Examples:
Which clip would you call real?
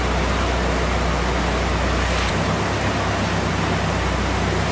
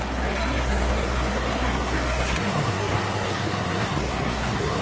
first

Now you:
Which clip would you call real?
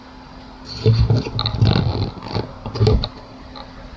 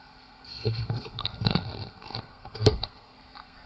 first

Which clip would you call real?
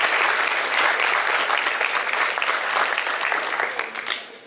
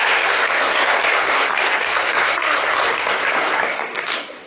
first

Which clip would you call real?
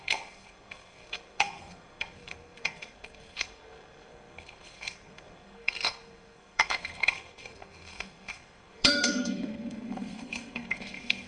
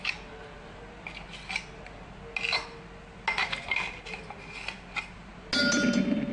second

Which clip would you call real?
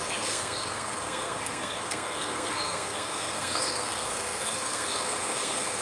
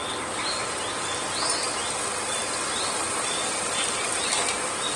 second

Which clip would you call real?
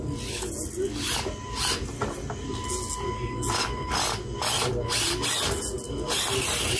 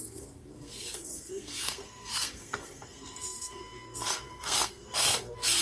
first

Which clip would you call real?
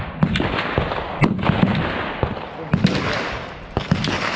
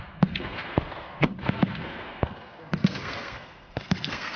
first